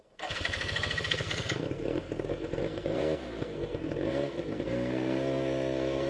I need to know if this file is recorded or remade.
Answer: remade